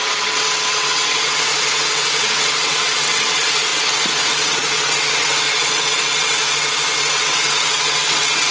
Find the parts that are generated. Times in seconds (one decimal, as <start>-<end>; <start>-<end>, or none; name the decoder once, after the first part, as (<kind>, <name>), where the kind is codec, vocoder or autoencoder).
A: 0.0-8.5 (vocoder, WaveNeXt)